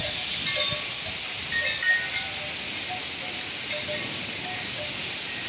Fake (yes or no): no